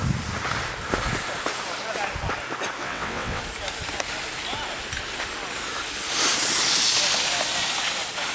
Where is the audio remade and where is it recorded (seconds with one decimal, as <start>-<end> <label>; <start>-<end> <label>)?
0.0-2.8 recorded; 2.8-3.4 remade; 3.4-8.3 recorded